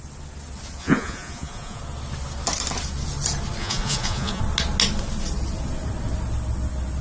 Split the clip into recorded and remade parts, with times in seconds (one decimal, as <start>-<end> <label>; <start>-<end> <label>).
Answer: 0.0-0.8 recorded; 0.8-1.8 remade; 1.8-3.6 recorded; 3.6-4.4 remade; 4.4-7.0 recorded